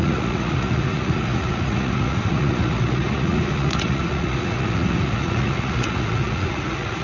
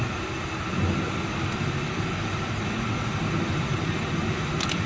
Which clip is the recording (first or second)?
second